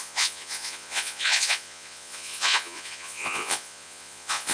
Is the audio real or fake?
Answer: fake